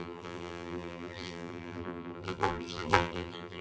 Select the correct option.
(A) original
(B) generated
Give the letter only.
B